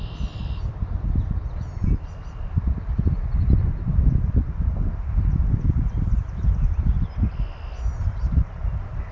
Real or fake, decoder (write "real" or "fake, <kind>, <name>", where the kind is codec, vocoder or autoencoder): real